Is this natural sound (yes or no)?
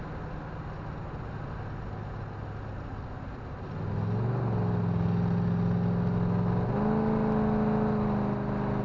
yes